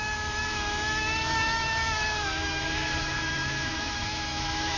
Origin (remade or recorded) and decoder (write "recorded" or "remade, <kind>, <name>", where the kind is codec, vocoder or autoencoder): remade, autoencoder, DAC-VAE